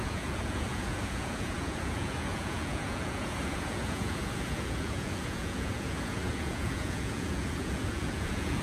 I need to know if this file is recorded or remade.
remade